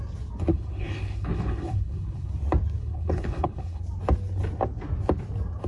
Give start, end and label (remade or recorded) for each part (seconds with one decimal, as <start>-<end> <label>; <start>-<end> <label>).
0.0-0.5 recorded; 0.5-2.3 remade; 2.3-2.8 recorded; 2.8-3.8 remade; 3.8-5.7 recorded